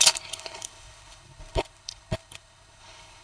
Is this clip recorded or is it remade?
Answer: remade